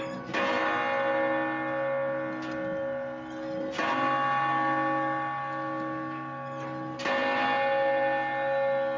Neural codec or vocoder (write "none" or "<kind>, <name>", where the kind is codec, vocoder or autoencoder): none